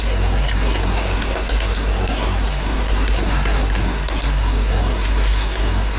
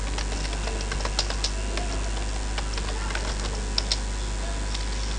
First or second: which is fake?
first